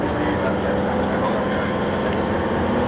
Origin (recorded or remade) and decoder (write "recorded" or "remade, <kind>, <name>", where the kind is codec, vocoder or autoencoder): recorded